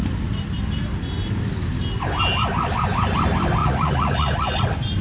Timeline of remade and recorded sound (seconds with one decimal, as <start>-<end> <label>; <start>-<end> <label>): 0.0-3.6 recorded; 3.6-4.6 remade; 4.6-5.0 recorded